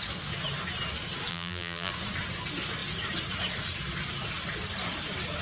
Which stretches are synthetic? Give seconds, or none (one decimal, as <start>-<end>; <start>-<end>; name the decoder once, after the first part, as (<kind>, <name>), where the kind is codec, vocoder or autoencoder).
1.3-1.9 (vocoder, BigVGAN v2)